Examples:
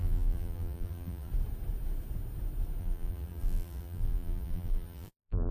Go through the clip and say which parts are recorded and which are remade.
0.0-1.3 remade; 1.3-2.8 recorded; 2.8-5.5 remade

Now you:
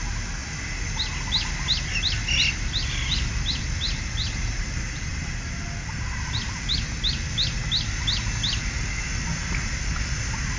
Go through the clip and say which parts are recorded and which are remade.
0.0-10.6 recorded

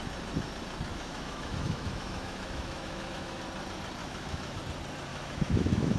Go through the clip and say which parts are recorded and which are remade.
0.0-0.9 recorded; 0.9-3.4 remade; 3.4-4.0 recorded; 4.0-4.6 remade; 4.6-5.1 recorded; 5.1-6.0 remade

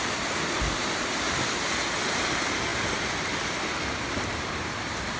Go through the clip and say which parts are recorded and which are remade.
0.0-5.2 recorded

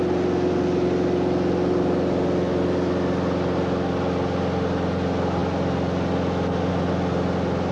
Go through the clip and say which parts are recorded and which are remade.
0.0-7.7 recorded

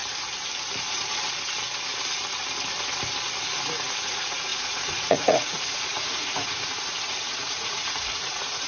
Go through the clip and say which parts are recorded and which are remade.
0.0-4.0 recorded; 4.0-8.7 remade

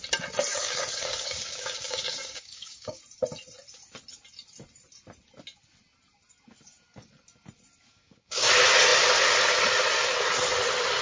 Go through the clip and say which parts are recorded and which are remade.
0.0-0.5 recorded; 0.5-3.0 remade; 3.0-7.9 recorded; 7.9-8.5 remade; 8.5-11.0 recorded

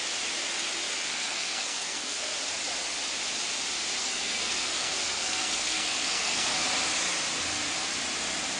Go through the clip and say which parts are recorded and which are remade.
0.0-1.1 recorded; 1.1-2.3 remade; 2.3-4.0 recorded; 4.0-6.5 remade; 6.5-8.6 recorded